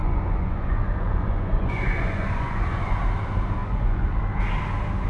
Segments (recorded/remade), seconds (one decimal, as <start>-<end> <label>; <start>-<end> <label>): 0.0-3.0 remade; 3.0-3.6 recorded; 3.6-4.2 remade; 4.2-5.1 recorded